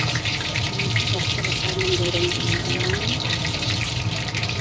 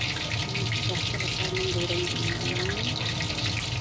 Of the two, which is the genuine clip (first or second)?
second